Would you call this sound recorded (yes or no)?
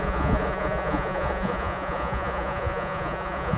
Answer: no